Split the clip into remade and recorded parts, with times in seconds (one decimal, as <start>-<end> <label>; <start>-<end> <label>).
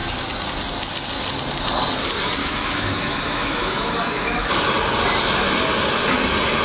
0.0-2.4 recorded; 2.4-4.5 remade; 4.5-6.6 recorded